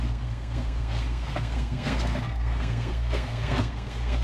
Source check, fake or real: fake